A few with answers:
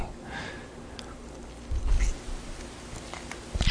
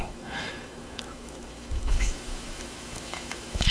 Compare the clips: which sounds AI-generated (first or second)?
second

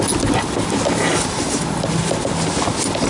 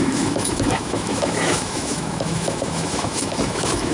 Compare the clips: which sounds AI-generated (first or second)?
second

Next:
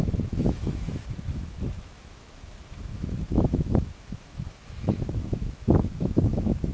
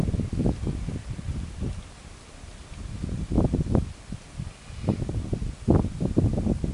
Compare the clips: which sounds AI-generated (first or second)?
first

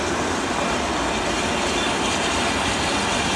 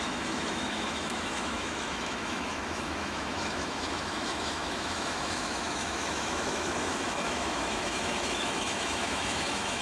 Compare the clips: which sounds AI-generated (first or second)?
second